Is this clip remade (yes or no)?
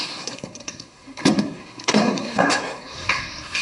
yes